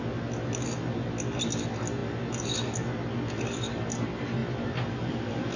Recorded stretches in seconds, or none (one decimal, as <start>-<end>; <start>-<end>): 0.0-4.4